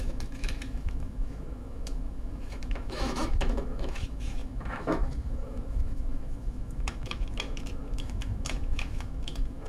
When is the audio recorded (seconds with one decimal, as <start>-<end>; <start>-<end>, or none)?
none